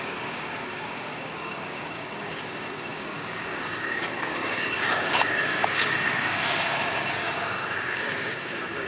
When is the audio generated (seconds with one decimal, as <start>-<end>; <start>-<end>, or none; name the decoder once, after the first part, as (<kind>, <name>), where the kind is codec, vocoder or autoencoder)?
0.0-8.9 (codec, DAC)